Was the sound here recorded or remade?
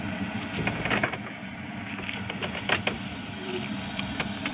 recorded